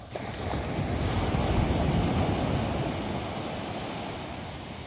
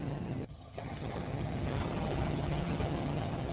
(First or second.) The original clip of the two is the first